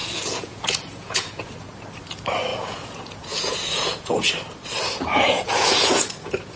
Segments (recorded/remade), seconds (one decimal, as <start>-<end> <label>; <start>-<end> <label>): 0.0-1.5 remade; 1.5-2.5 recorded; 2.5-4.3 remade; 4.3-5.1 recorded; 5.1-6.6 remade